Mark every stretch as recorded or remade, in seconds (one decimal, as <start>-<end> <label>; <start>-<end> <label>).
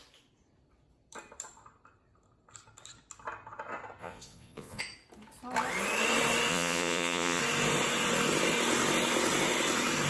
0.0-4.0 recorded; 4.0-4.8 remade; 4.8-6.5 recorded; 6.5-7.4 remade; 7.4-10.1 recorded